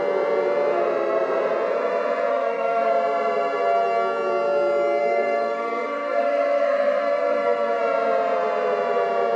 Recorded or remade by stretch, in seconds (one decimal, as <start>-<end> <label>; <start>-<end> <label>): 0.0-2.3 recorded; 2.3-2.9 remade; 2.9-5.0 recorded; 5.0-7.8 remade; 7.8-9.4 recorded